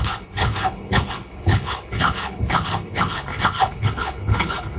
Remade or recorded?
remade